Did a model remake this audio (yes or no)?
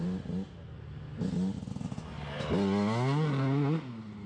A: no